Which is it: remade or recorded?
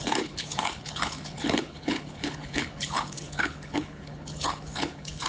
remade